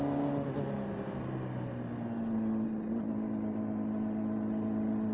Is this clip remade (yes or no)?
no